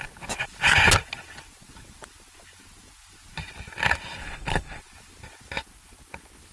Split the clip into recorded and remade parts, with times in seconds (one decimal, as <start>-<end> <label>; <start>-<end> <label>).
0.0-4.2 recorded; 4.2-4.8 remade; 4.8-6.5 recorded

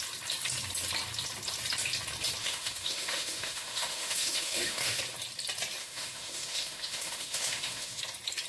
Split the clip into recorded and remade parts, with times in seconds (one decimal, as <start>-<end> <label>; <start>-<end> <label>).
0.0-2.4 recorded; 2.4-5.0 remade; 5.0-5.8 recorded; 5.8-8.0 remade; 8.0-8.5 recorded